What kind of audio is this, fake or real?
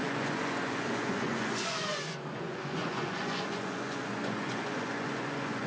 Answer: fake